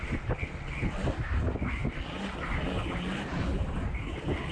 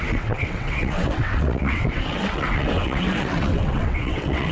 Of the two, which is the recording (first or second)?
first